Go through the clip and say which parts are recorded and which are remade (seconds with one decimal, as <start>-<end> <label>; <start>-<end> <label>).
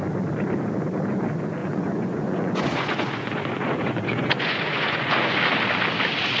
0.0-1.6 recorded; 1.6-5.4 remade; 5.4-6.4 recorded